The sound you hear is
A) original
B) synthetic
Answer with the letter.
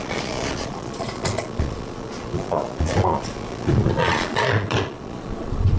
B